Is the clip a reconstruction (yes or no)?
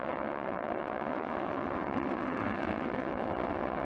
yes